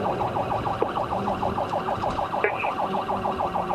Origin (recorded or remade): remade